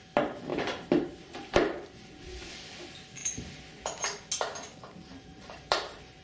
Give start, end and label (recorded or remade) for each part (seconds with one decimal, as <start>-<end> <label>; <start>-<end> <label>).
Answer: 0.0-0.5 recorded; 0.5-2.5 remade; 2.5-5.1 recorded; 5.1-6.2 remade